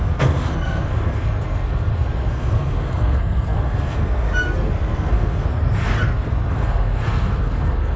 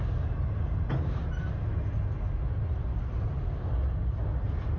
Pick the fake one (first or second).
first